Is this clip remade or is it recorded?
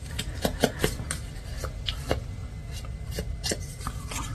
recorded